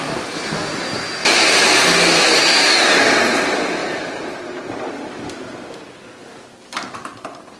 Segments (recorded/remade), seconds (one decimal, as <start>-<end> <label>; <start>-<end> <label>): 0.0-1.2 recorded; 1.2-2.4 remade; 2.4-3.8 recorded; 3.8-4.4 remade; 4.4-7.6 recorded